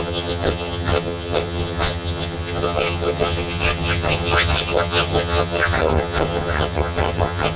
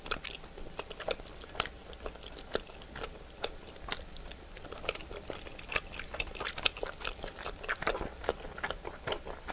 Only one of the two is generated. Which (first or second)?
first